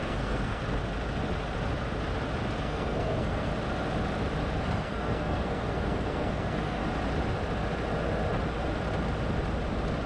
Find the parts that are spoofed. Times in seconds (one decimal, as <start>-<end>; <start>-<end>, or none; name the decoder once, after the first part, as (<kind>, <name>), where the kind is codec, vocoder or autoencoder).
0.0-0.6 (codec, SNAC); 2.6-3.5; 4.6-6.8